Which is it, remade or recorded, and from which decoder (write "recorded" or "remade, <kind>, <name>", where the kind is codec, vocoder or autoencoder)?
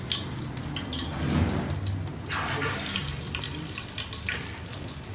recorded